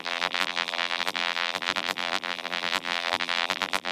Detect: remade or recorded remade